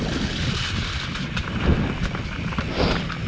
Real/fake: real